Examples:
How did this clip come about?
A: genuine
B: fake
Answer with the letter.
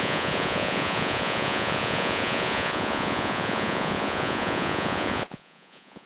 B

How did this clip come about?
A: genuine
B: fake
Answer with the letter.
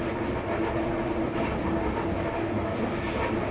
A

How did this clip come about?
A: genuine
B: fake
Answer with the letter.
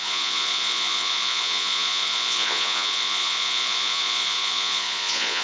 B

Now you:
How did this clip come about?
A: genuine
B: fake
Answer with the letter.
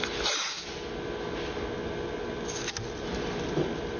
A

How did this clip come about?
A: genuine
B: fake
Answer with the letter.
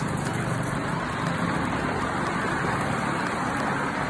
A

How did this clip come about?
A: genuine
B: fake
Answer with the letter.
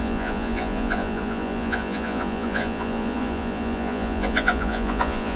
B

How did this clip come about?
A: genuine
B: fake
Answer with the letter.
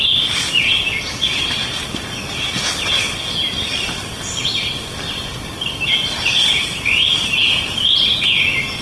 A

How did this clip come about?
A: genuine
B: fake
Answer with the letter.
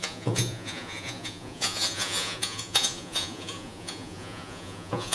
B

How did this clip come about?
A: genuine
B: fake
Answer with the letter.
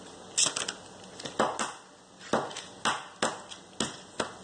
A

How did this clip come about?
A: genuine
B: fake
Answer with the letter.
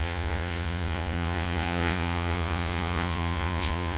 B